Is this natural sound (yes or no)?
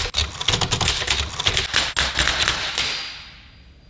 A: yes